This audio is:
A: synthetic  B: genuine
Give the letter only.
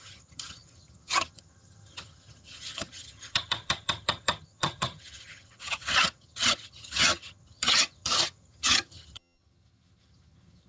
A